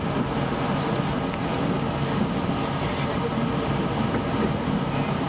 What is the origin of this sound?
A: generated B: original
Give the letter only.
B